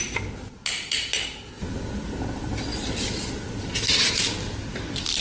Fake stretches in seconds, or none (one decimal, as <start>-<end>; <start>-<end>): 4.6-5.2